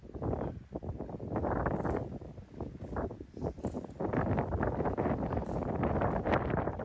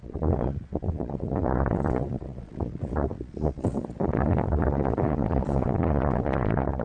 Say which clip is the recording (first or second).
first